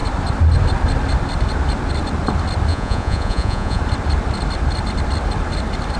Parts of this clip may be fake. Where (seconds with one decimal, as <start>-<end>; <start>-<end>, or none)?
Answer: 2.7-3.8